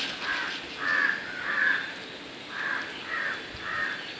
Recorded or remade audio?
recorded